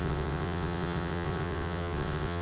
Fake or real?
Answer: fake